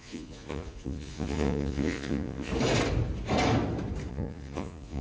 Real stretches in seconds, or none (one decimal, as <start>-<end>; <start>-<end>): 2.5-4.1